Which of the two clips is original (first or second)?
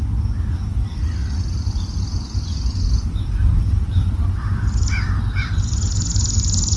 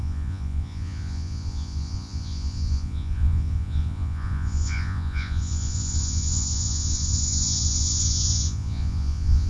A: first